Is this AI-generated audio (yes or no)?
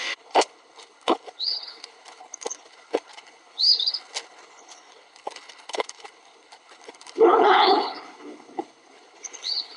yes